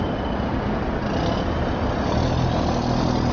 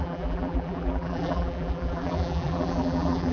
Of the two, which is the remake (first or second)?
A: second